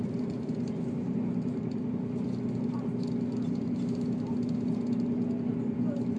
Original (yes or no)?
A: yes